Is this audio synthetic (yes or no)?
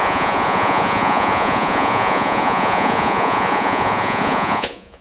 yes